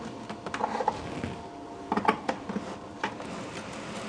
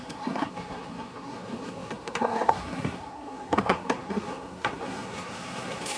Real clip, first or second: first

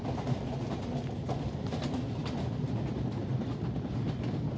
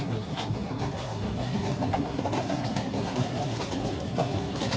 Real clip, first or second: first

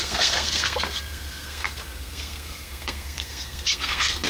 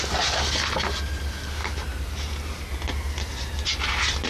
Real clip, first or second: second